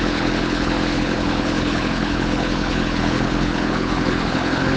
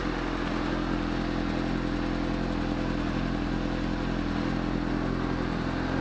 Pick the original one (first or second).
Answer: second